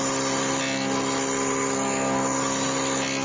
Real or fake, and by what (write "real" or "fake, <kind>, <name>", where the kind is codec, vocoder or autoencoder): real